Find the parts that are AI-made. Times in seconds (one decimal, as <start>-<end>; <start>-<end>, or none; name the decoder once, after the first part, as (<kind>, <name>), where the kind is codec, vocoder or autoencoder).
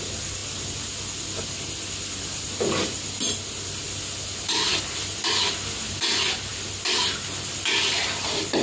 none